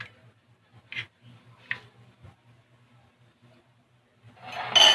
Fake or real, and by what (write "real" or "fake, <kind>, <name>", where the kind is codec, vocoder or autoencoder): real